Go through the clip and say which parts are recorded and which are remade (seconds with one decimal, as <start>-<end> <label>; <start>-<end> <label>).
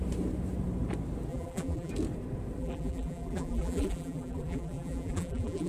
0.0-1.3 recorded; 1.3-1.9 remade; 1.9-2.6 recorded; 2.6-5.7 remade